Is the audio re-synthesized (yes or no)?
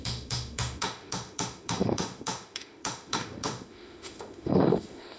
yes